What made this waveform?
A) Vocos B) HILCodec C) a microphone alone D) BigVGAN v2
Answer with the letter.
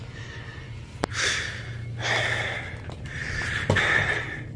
C